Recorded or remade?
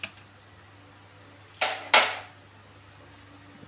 recorded